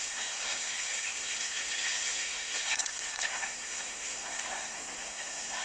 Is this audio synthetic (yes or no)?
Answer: yes